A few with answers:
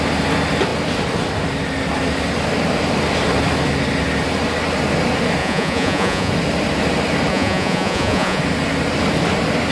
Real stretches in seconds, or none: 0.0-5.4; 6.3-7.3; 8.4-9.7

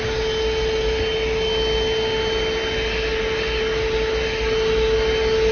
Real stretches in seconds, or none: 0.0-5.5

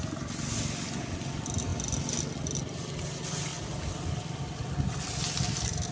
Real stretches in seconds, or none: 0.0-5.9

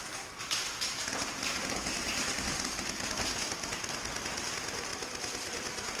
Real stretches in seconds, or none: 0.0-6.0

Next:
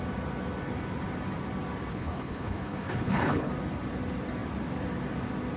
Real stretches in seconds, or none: 0.0-1.9; 3.5-5.6

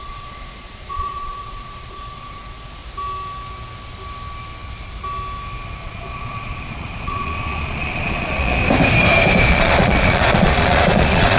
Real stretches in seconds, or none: 2.8-5.8; 8.6-9.5